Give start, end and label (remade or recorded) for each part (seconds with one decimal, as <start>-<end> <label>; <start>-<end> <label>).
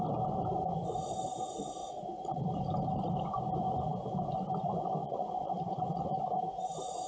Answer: 0.0-1.8 recorded; 1.8-2.4 remade; 2.4-5.0 recorded; 5.0-6.1 remade; 6.1-7.1 recorded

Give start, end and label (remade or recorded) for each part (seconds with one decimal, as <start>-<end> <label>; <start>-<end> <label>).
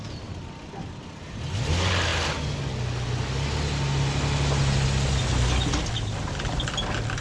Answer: 0.0-7.2 recorded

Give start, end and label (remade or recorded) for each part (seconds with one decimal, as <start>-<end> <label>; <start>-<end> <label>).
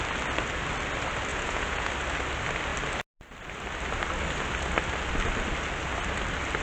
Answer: 0.0-1.3 recorded; 1.3-1.9 remade; 1.9-6.6 recorded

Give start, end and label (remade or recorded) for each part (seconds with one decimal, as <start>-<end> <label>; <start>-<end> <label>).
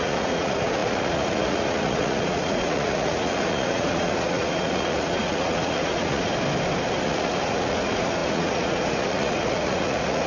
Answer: 0.0-6.3 remade; 6.3-7.0 recorded; 7.0-10.3 remade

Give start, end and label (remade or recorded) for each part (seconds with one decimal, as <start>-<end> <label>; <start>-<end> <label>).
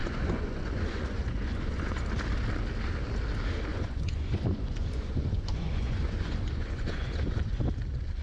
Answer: 0.0-2.0 remade; 2.0-3.7 recorded; 3.7-7.6 remade; 7.6-8.2 recorded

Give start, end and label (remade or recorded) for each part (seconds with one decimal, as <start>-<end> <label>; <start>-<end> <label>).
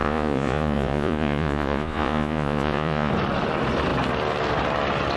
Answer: 0.0-3.1 remade; 3.1-5.2 recorded